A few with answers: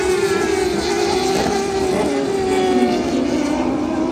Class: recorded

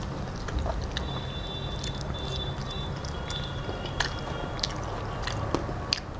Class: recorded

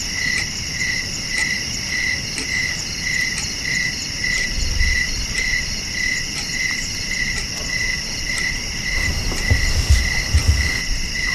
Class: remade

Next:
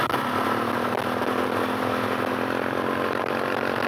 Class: recorded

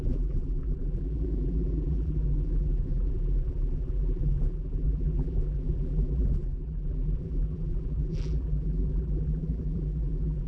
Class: remade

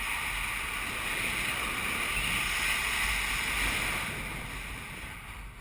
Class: recorded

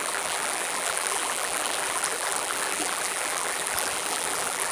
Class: remade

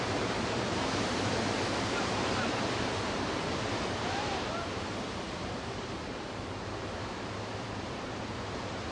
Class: remade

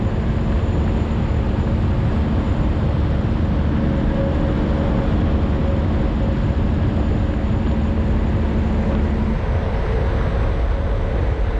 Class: recorded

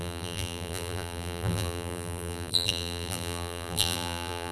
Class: remade